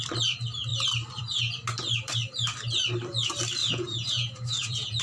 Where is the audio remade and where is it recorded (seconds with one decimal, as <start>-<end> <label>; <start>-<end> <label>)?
0.0-3.6 recorded; 3.6-5.0 remade